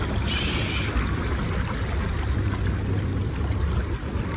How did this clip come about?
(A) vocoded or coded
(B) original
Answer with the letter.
B